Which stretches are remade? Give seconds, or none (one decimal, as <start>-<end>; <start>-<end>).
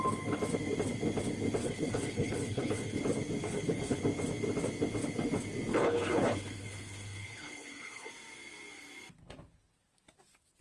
1.6-3.0; 3.4-4.0; 5.7-8.1